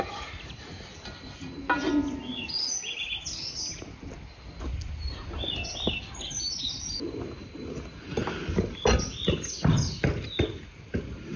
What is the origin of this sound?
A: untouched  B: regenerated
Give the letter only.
A